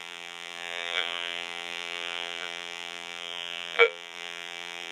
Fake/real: fake